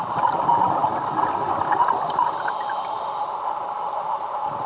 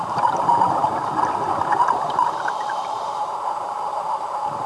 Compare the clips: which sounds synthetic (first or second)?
second